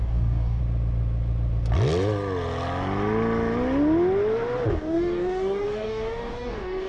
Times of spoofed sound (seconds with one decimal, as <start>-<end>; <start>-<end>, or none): 0.0-0.6; 4.7-6.9